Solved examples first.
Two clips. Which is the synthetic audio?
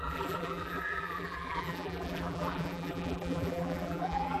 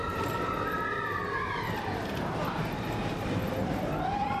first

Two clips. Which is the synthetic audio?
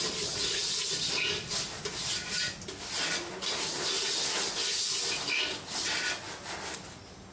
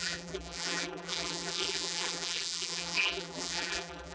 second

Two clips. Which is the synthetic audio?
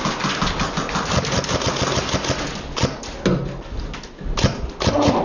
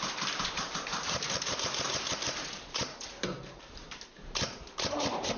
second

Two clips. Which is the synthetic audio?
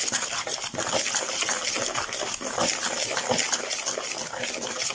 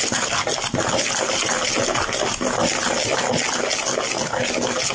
first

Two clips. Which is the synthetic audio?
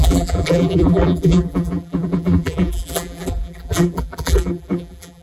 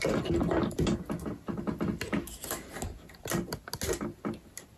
first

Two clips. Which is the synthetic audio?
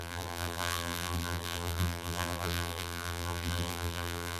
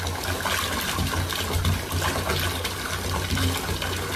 first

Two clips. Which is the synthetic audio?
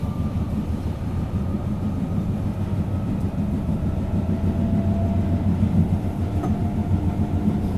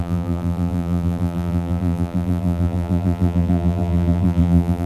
second